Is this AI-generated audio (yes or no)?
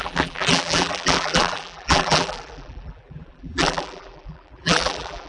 yes